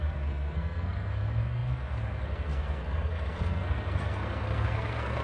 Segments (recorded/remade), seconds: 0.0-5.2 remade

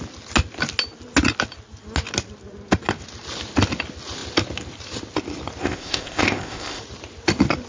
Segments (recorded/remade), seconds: 0.0-5.6 recorded; 5.6-6.8 remade; 6.8-7.7 recorded

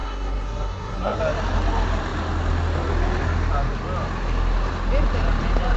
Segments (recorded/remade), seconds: 0.0-1.2 remade; 1.2-5.8 recorded